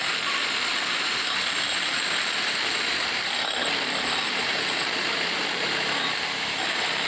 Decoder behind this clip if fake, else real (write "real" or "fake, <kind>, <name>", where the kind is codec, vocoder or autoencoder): fake, vocoder, BigVGAN v2